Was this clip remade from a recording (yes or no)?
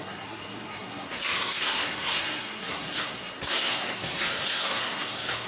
yes